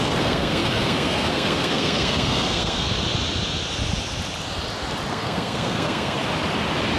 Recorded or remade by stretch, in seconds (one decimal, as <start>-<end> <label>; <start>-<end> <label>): 0.0-2.9 remade; 2.9-5.1 recorded; 5.1-6.2 remade; 6.2-7.0 recorded